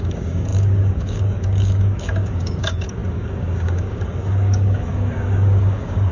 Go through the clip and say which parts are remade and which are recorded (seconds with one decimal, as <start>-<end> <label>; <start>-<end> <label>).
0.0-6.1 remade